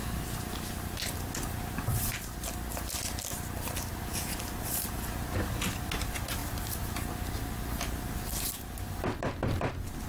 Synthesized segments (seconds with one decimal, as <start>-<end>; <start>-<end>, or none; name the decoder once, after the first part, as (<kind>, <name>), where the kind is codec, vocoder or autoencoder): none